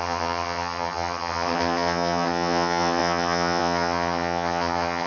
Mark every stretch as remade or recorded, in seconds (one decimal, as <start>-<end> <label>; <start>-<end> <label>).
0.0-5.1 remade